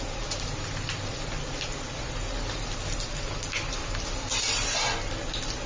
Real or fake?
real